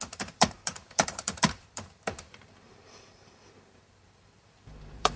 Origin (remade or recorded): remade